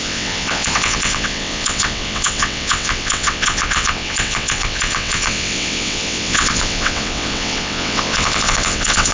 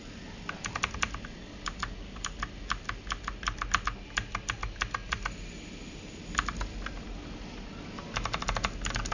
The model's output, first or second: first